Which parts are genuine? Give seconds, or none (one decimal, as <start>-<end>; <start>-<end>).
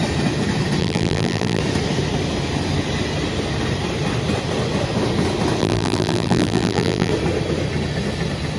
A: 0.0-0.8; 1.6-5.6; 7.1-8.6